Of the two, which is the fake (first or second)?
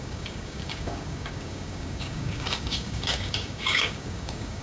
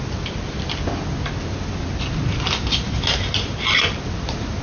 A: first